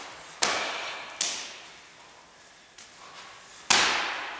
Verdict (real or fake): real